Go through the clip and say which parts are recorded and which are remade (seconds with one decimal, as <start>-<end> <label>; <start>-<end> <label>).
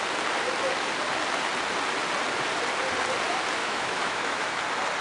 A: 0.0-3.6 recorded; 3.6-4.6 remade; 4.6-5.0 recorded